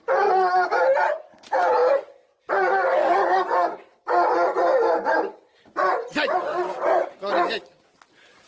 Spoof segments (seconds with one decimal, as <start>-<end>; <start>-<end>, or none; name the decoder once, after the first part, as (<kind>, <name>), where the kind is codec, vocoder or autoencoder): none